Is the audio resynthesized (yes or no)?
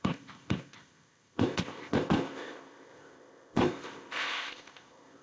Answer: yes